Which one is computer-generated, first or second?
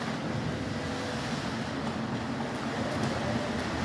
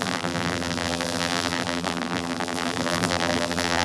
second